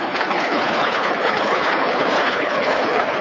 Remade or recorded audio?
remade